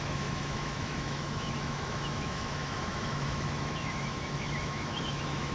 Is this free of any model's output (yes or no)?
no